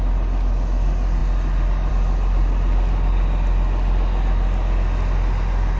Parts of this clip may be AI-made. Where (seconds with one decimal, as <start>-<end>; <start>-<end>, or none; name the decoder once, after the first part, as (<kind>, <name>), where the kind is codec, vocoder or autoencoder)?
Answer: none